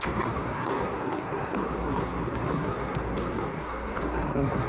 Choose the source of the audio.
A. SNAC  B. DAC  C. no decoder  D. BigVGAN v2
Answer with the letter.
A